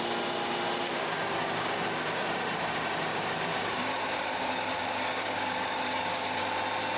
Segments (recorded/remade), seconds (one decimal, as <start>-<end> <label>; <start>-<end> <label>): 0.0-0.9 recorded; 0.9-2.2 remade; 2.2-3.1 recorded; 3.1-6.4 remade; 6.4-7.0 recorded